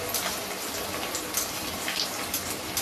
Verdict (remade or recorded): recorded